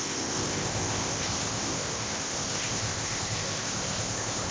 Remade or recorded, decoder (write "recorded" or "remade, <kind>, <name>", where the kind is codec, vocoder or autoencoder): remade, codec, ZipCodec